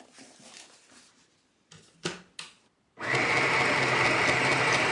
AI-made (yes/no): no